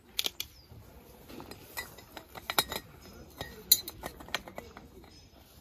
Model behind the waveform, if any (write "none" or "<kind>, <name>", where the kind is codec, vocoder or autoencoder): none